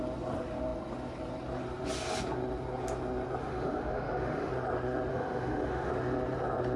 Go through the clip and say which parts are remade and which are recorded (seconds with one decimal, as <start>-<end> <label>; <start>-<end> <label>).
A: 0.0-3.4 recorded; 3.4-4.5 remade; 4.5-5.1 recorded; 5.1-5.9 remade; 5.9-6.8 recorded